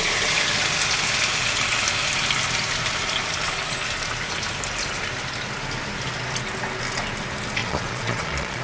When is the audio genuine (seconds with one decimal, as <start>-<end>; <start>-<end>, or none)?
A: 0.0-7.6

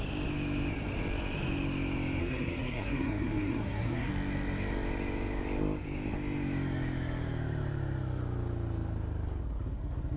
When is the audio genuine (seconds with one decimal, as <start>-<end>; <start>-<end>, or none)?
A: 0.0-2.2; 4.1-10.2